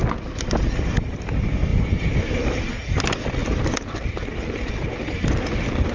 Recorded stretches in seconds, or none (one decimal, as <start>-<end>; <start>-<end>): 0.6-1.7; 2.8-3.4; 4.2-5.9